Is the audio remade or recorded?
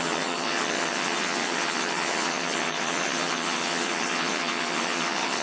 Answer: remade